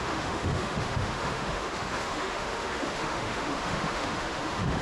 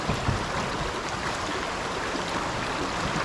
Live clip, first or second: second